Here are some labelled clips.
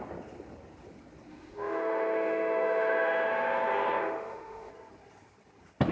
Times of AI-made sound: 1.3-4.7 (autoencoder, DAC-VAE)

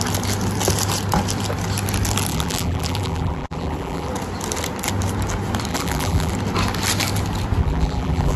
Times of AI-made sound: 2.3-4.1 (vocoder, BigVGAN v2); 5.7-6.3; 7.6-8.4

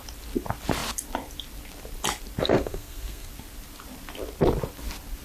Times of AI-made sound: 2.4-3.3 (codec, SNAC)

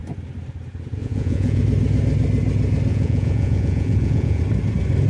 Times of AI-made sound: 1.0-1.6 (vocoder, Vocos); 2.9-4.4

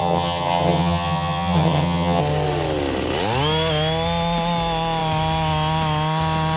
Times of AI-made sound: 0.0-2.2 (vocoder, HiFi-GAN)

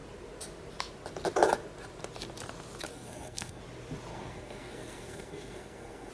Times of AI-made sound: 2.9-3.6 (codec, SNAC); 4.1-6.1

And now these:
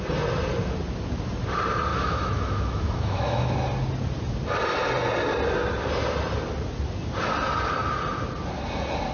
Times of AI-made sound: 1.9-3.5 (autoencoder, DAC-VAE)